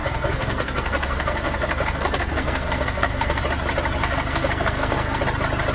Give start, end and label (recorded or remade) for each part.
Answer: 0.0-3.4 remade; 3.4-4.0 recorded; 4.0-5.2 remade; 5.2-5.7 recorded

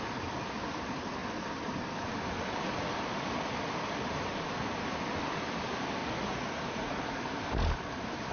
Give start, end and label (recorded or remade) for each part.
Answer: 0.0-6.0 recorded; 6.0-7.2 remade; 7.2-8.3 recorded

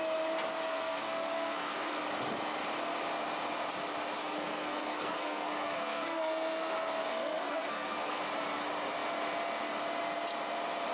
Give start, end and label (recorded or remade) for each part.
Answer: 0.0-0.7 recorded; 0.7-2.0 remade; 2.0-4.2 recorded; 4.2-8.2 remade; 8.2-10.9 recorded

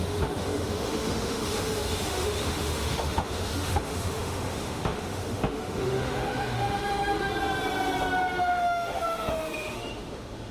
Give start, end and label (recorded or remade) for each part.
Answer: 0.0-7.3 remade; 7.3-8.4 recorded; 8.4-10.5 remade

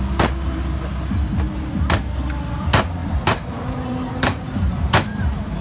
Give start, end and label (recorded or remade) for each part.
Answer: 0.0-3.0 recorded; 3.0-4.7 remade; 4.7-5.6 recorded

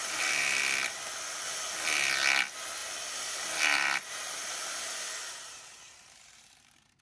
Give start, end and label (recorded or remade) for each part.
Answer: 0.0-0.6 remade; 0.6-2.8 recorded; 2.8-7.0 remade

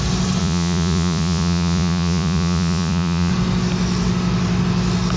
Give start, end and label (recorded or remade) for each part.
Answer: 0.0-0.4 recorded; 0.4-3.3 remade; 3.3-5.2 recorded